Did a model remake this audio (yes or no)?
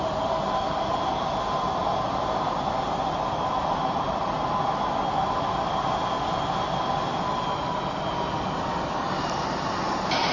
no